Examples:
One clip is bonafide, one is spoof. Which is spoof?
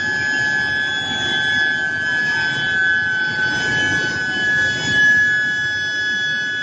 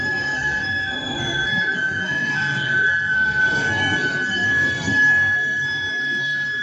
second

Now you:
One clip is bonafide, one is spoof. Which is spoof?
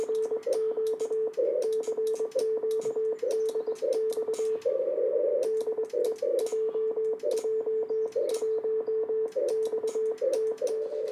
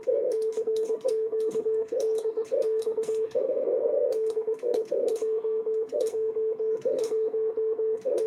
second